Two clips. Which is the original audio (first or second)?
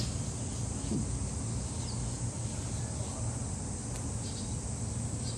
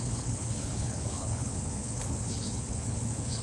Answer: first